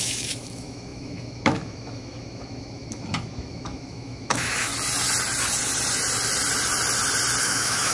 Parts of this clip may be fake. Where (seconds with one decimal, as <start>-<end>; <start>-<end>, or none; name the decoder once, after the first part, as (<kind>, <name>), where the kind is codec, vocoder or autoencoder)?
0.0-4.7 (autoencoder, DAC-VAE); 7.4-7.9